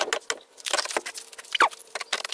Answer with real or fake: real